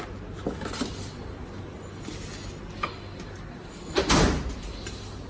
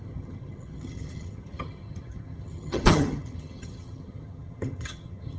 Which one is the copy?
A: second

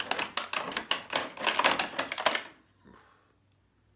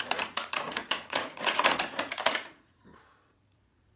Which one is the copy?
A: second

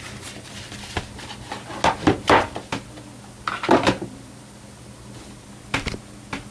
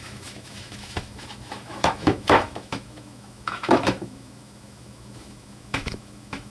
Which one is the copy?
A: second